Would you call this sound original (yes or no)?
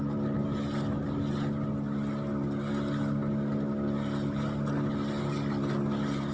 yes